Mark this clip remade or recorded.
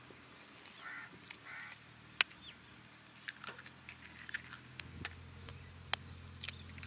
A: recorded